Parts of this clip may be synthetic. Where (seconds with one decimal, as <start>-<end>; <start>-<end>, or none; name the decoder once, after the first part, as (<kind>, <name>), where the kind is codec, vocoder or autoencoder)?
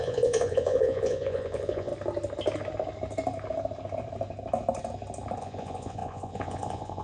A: 0.0-1.9 (vocoder, Vocos); 5.4-7.0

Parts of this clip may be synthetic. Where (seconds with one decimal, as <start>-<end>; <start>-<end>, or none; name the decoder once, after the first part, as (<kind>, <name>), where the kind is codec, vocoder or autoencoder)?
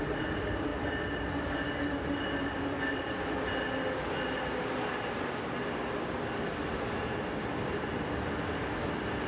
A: none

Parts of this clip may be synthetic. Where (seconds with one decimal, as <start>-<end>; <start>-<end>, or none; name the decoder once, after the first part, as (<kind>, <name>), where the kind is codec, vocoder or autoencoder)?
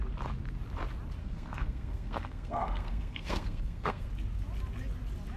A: 1.2-4.1 (codec, SNAC)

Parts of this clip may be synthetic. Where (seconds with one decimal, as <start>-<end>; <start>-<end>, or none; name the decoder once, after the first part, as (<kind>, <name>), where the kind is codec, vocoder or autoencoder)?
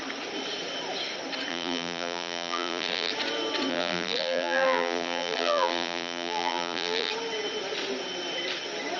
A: 1.5-3.1 (vocoder, BigVGAN v2); 3.7-7.1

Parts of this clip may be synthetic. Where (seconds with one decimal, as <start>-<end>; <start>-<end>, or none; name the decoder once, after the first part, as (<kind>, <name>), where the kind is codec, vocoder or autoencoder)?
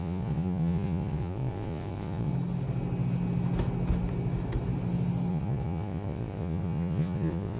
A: 0.0-2.3 (vocoder, Vocos); 5.3-7.6